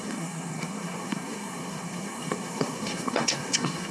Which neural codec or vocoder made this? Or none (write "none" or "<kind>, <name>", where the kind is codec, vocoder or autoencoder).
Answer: codec, SNAC